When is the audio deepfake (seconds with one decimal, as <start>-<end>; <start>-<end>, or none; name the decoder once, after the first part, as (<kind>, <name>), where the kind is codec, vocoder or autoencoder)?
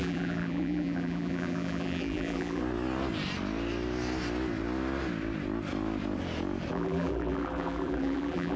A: 0.0-2.6 (vocoder, BigVGAN v2); 6.7-8.6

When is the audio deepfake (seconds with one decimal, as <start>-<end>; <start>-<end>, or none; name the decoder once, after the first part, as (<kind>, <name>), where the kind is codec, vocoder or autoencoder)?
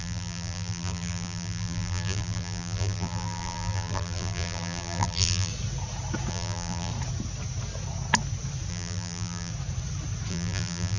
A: 0.0-5.5 (vocoder, BigVGAN v2); 6.3-6.9; 8.7-9.5; 10.3-11.0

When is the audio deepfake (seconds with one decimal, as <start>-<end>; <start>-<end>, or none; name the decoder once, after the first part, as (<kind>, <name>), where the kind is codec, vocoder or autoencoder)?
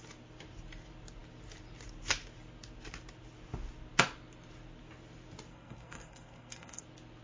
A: 5.5-6.8 (codec, SNAC)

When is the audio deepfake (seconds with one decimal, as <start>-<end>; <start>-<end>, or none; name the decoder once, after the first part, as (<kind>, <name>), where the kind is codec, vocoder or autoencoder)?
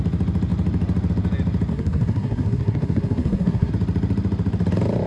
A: 1.7-3.7 (codec, SNAC)